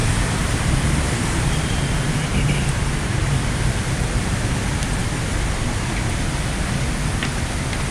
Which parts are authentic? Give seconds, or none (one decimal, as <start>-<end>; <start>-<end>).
4.5-7.9